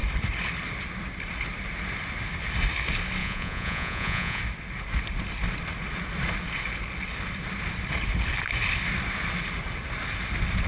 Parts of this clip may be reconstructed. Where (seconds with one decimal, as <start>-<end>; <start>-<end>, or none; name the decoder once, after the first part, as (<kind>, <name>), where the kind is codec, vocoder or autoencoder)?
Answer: 3.2-4.4 (vocoder, Vocos)